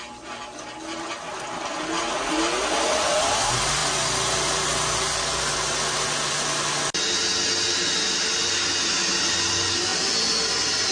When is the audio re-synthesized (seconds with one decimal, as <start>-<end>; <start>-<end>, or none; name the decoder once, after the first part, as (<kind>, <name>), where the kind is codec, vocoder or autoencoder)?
none